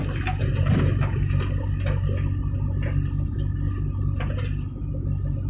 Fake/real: real